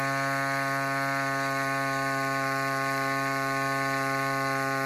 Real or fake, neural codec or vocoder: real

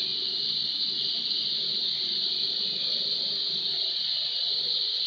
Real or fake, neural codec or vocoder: real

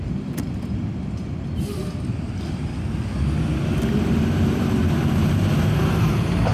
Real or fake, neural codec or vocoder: real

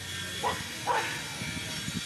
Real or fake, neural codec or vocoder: real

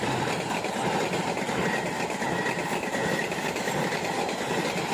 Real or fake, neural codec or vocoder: real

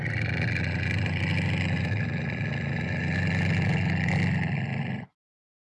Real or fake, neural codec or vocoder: real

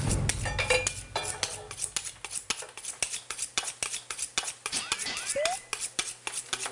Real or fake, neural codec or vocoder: real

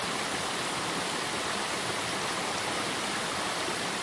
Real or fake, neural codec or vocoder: fake, vocoder, BigVGAN v2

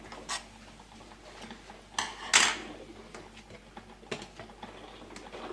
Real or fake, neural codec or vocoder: real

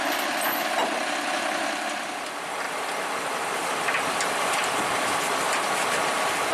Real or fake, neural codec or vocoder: real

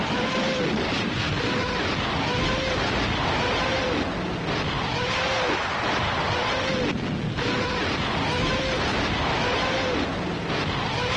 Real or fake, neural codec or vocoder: real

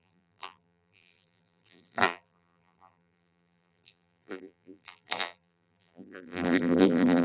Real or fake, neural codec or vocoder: fake, vocoder, BigVGAN v2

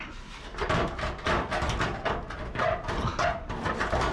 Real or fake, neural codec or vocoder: fake, vocoder, BigVGAN v2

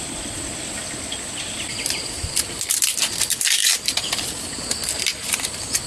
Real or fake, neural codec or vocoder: fake, vocoder, BigVGAN v2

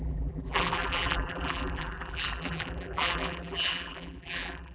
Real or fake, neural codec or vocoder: fake, vocoder, BigVGAN v2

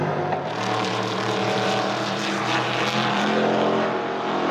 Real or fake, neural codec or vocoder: fake, vocoder, BigVGAN v2